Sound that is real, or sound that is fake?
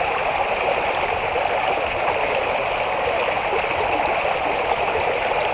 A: real